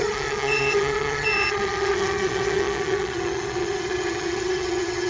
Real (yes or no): no